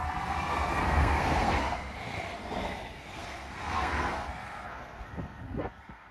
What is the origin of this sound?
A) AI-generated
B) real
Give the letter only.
A